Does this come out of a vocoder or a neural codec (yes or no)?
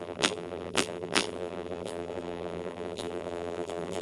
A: yes